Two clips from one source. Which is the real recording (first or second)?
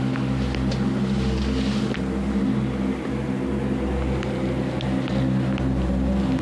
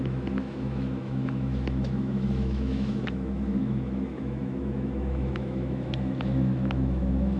first